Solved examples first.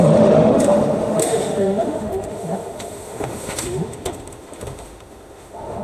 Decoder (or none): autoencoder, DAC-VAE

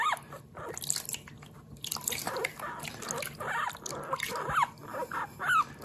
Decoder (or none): none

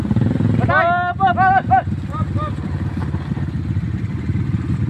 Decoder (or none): none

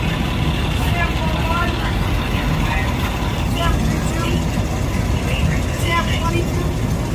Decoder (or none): none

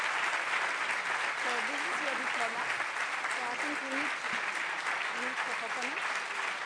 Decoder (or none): none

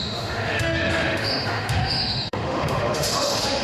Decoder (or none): autoencoder, DAC-VAE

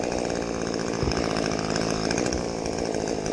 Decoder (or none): none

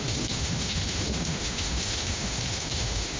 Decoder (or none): autoencoder, DAC-VAE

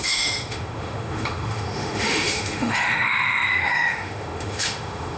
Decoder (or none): autoencoder, DAC-VAE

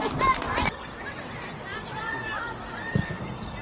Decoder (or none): none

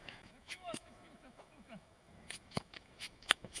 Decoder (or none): autoencoder, DAC-VAE